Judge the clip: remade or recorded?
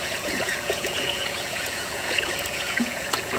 remade